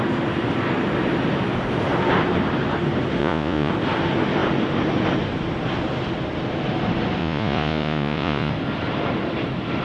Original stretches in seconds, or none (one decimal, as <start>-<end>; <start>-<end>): 0.0-3.2; 3.7-7.2; 8.5-9.8